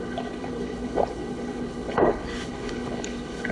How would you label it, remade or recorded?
remade